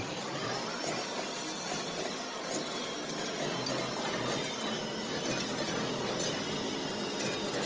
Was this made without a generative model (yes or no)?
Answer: yes